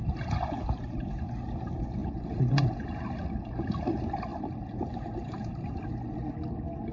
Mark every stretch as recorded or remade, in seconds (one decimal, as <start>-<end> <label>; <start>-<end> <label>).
0.0-1.3 remade; 1.3-2.0 recorded; 2.0-3.2 remade; 3.2-4.3 recorded; 4.3-5.8 remade; 5.8-6.9 recorded